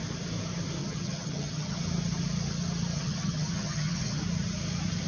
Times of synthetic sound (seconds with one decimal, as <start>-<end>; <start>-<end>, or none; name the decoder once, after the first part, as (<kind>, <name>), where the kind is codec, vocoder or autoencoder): 0.8-1.8 (vocoder, HiFi-GAN); 3.0-4.2